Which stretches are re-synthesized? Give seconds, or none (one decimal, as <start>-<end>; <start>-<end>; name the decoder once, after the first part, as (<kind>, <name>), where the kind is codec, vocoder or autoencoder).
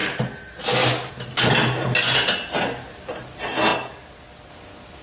none